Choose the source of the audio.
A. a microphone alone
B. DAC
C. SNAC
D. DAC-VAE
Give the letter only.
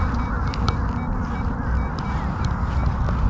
A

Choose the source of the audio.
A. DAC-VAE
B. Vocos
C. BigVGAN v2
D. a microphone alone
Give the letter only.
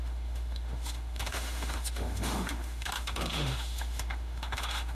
A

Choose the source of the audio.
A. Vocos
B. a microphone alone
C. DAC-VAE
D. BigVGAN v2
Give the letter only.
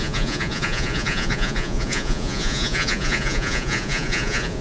A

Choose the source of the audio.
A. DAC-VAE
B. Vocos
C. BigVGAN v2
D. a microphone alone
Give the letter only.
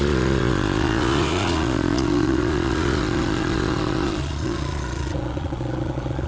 B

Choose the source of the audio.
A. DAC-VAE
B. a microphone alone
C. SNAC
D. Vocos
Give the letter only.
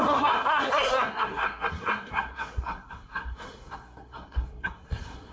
C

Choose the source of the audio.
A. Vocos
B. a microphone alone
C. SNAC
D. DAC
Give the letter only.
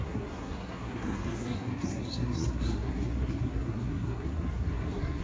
C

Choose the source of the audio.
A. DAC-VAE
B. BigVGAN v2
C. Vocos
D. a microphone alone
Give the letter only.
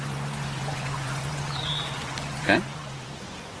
C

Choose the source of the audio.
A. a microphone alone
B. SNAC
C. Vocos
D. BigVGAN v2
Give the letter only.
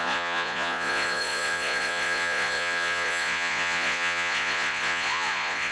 C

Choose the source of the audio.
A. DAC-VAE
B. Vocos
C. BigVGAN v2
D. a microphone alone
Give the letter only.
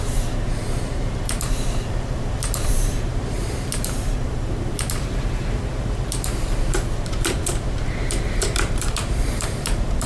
C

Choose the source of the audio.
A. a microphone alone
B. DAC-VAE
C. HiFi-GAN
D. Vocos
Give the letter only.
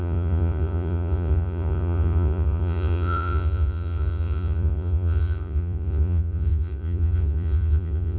D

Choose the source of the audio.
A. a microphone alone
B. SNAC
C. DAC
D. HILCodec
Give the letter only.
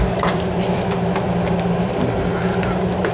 A